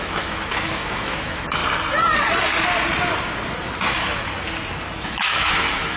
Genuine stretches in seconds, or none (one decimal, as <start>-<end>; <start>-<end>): 1.6-5.0